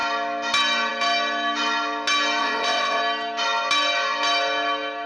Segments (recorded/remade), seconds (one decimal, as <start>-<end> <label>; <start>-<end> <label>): 0.0-2.4 recorded; 2.4-3.0 remade; 3.0-5.1 recorded